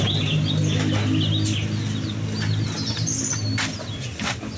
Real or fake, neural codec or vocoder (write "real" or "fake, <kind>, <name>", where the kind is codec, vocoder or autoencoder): real